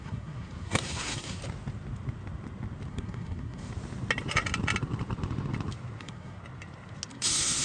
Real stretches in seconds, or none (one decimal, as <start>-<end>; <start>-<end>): 1.4-2.9; 3.7-6.0; 6.4-7.1

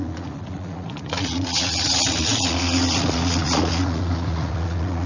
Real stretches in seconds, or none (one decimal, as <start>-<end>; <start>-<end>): none

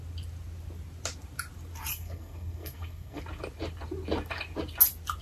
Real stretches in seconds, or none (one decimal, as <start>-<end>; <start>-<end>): 0.0-1.9; 3.2-5.2

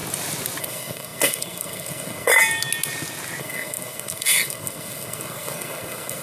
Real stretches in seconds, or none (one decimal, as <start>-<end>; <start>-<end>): 0.0-0.6; 2.3-3.4

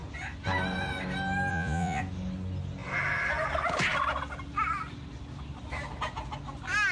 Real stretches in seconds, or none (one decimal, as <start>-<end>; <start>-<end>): 0.0-1.5; 2.0-6.9

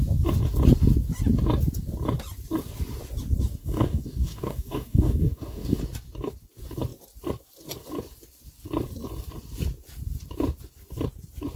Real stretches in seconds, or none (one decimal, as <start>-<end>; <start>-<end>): 0.0-3.6; 5.8-11.6

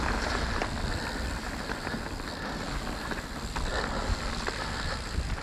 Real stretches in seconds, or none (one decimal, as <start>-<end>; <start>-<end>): 0.0-5.4

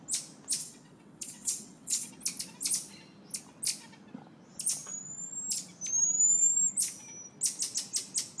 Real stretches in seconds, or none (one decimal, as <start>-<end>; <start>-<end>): 0.0-0.6; 2.1-8.4